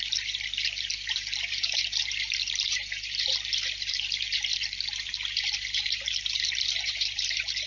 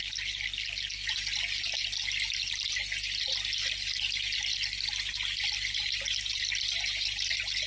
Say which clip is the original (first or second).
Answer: second